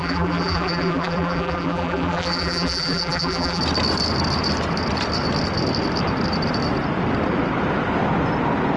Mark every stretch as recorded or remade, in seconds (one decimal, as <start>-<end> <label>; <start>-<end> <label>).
0.0-3.6 remade; 3.6-8.8 recorded